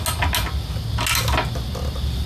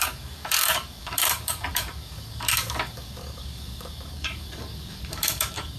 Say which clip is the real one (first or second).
first